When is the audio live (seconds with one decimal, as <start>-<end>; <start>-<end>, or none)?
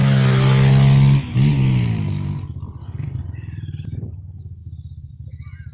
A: 0.0-5.7